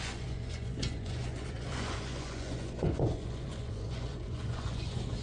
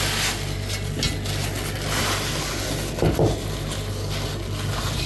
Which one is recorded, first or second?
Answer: second